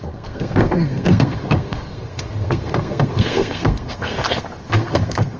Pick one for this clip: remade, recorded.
remade